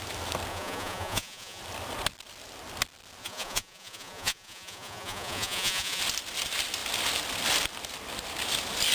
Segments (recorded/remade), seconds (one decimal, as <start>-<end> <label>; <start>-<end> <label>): 0.0-0.5 recorded; 0.5-1.6 remade; 1.6-3.2 recorded; 3.2-6.0 remade; 6.0-8.9 recorded